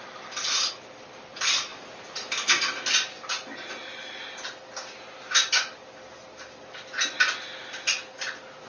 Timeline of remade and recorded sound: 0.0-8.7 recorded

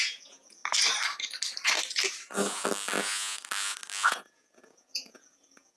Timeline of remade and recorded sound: 0.0-0.6 remade; 0.6-4.1 recorded; 4.1-5.8 remade

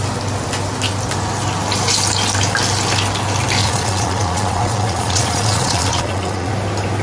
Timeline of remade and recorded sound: 0.0-3.6 recorded; 3.6-6.5 remade; 6.5-7.0 recorded

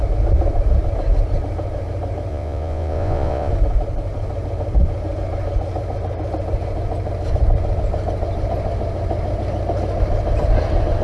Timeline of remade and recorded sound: 0.0-2.3 recorded; 2.3-3.5 remade; 3.5-11.0 recorded

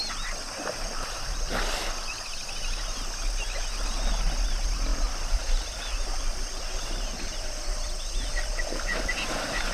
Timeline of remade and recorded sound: 0.0-4.9 recorded; 4.9-9.7 remade

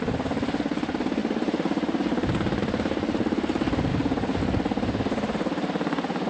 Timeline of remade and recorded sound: 0.0-3.9 recorded; 3.9-4.4 remade; 4.4-6.3 recorded

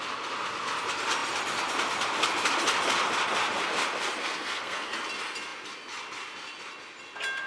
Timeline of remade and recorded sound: 0.0-4.2 recorded; 4.2-4.9 remade; 4.9-7.5 recorded

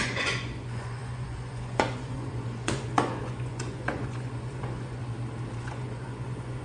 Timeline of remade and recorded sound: 0.0-5.0 remade; 5.0-5.6 recorded; 5.6-6.6 remade